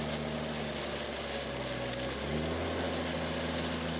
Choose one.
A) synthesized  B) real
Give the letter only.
B